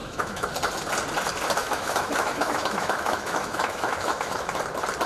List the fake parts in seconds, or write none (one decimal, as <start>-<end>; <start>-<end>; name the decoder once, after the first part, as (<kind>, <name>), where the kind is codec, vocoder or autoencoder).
0.0-0.5 (autoencoder, DAC-VAE); 1.6-4.6